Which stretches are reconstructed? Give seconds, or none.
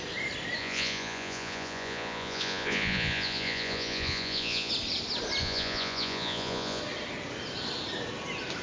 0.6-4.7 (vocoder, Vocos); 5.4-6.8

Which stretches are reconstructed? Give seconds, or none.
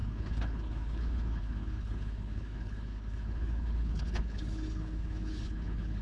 0.0-6.0 (codec, HILCodec)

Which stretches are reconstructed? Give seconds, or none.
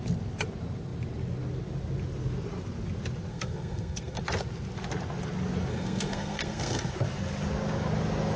3.3-4.2 (codec, SNAC); 5.7-6.9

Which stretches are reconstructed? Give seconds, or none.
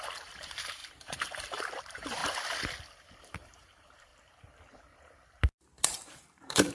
0.0-2.2 (vocoder, BigVGAN v2); 3.2-4.1; 5.8-6.7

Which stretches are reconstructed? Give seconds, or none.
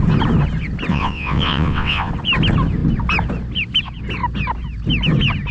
0.9-2.1 (vocoder, WaveNeXt)